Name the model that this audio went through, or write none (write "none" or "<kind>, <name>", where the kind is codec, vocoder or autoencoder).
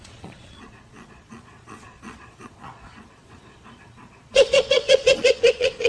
vocoder, Vocos